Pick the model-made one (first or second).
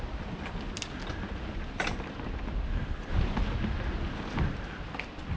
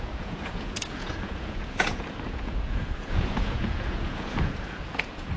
second